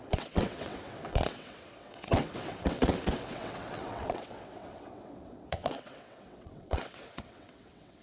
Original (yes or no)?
no